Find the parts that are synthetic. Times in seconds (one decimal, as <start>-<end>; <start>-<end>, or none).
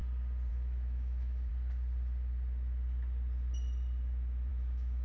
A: 0.5-1.5; 4.5-5.0